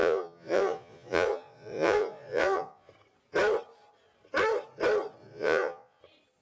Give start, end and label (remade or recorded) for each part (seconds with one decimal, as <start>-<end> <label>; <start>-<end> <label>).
0.0-2.9 remade; 2.9-5.2 recorded; 5.2-6.0 remade; 6.0-6.4 recorded